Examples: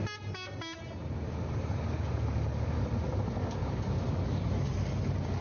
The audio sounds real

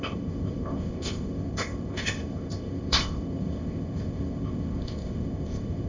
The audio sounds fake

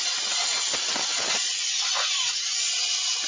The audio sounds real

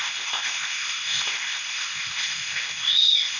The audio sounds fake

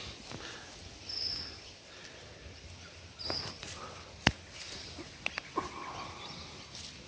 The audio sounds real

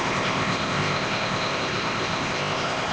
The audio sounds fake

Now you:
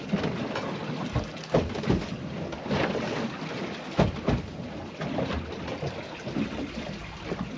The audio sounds real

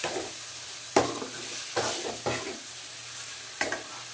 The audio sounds real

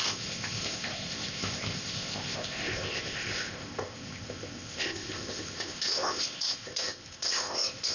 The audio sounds fake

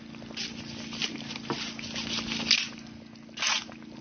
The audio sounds real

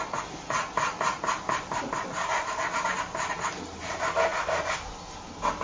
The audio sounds real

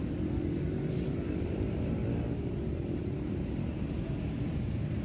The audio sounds real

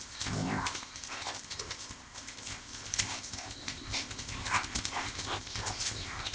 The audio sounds fake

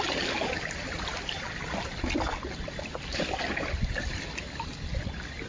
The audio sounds real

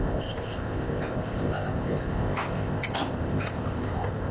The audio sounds fake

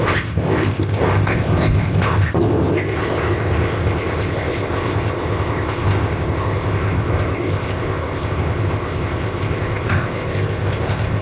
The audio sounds fake